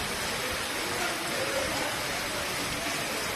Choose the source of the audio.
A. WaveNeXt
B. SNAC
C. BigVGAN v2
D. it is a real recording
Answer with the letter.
D